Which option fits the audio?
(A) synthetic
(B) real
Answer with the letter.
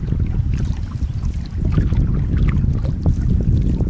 B